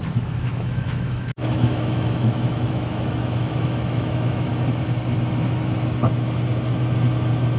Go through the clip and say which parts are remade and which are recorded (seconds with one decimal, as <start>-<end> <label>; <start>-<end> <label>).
0.0-4.5 remade; 4.5-7.6 recorded